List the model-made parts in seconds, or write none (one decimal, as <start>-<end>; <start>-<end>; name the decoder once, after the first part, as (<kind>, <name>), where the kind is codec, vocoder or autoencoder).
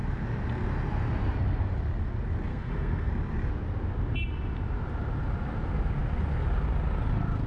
2.5-3.1 (codec, SNAC)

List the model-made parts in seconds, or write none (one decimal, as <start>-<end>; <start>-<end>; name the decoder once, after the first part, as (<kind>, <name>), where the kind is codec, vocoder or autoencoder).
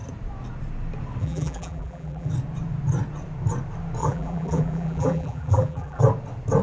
1.2-2.3 (vocoder, BigVGAN v2); 4.0-6.0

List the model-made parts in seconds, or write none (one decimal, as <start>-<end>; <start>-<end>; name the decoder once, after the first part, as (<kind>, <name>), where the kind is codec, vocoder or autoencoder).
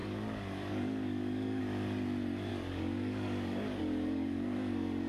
0.0-1.6 (codec, DAC); 2.5-5.1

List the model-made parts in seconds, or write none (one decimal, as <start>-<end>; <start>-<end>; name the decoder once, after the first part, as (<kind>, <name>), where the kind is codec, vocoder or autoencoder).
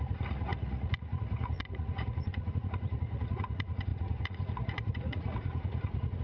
0.0-6.2 (vocoder, Vocos)